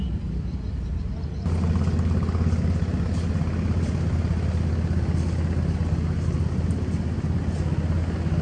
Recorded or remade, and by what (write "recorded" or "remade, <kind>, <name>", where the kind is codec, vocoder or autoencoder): recorded